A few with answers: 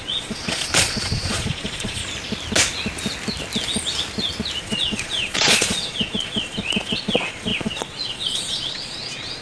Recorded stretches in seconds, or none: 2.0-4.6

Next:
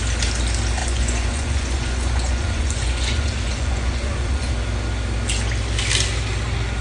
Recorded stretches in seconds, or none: 0.0-0.8; 4.5-6.8

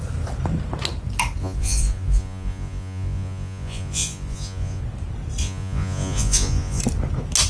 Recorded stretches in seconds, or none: 0.0-1.4; 4.8-5.4; 6.8-7.5

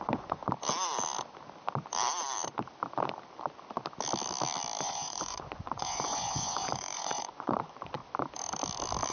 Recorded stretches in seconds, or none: 0.4-4.8; 8.0-9.1

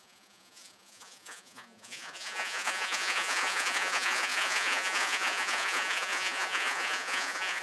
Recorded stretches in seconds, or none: none